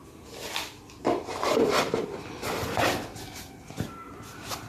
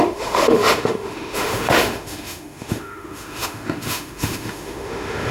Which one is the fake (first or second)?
second